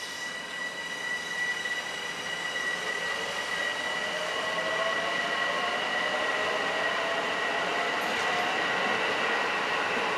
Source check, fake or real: real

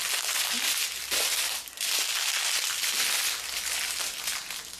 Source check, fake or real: real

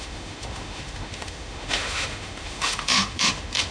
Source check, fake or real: fake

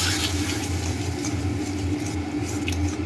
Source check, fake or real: real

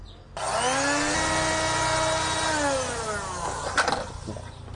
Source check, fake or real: real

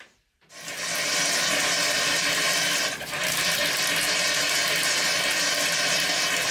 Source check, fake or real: real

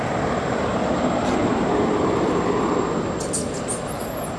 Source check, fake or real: real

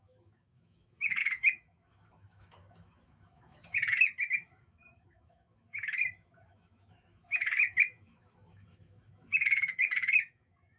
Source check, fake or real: fake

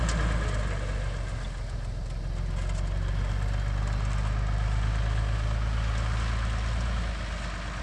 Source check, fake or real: real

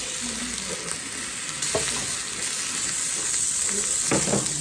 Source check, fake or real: real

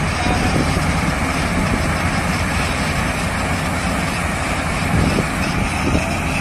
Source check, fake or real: real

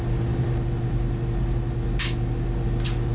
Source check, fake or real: real